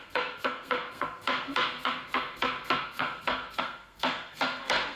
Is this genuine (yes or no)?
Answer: no